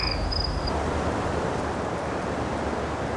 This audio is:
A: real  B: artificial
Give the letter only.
A